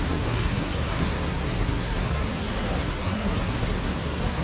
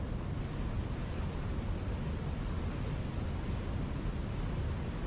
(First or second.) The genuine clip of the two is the second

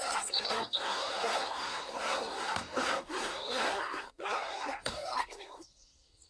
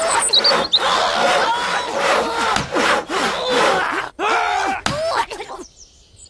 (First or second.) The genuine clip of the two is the second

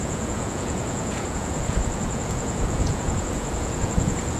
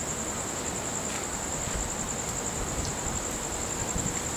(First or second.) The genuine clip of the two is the second